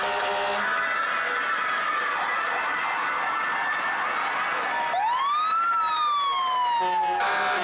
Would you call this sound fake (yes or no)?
no